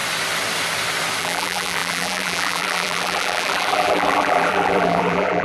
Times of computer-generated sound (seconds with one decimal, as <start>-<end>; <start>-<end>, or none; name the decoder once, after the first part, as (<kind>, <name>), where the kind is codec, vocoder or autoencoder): 1.2-5.4 (vocoder, BigVGAN v2)